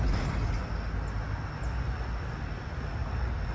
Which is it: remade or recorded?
recorded